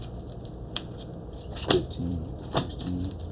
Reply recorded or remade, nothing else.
remade